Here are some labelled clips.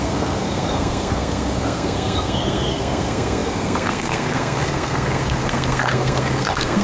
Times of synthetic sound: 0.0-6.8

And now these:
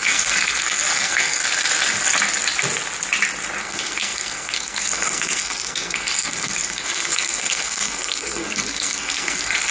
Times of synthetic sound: 0.0-1.4; 3.6-9.7